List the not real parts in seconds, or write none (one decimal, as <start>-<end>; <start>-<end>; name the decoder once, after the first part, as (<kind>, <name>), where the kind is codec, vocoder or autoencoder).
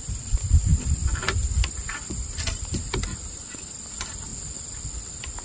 0.0-4.3 (vocoder, BigVGAN v2); 4.9-5.4